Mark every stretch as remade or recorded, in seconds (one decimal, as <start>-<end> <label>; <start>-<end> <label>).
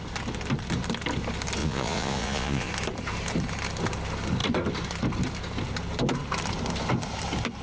0.0-1.6 recorded; 1.6-2.7 remade; 2.7-7.6 recorded